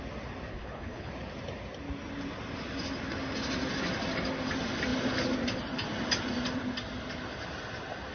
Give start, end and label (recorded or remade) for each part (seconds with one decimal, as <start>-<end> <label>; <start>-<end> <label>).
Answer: 0.0-0.5 recorded; 0.5-1.1 remade; 1.1-8.1 recorded